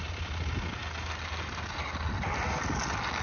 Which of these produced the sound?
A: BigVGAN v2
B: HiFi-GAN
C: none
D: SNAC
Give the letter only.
C